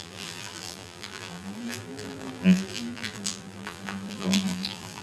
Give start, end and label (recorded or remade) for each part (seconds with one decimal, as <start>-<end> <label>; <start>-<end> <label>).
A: 0.0-5.0 remade